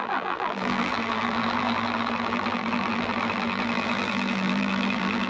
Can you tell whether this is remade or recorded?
remade